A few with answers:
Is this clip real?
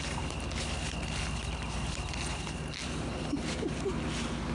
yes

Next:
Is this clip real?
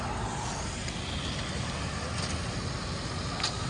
yes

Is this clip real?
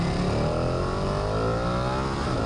yes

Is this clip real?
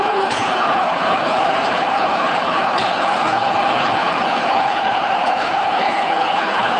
no